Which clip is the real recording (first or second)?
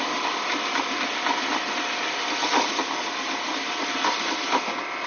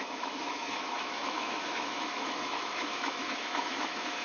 first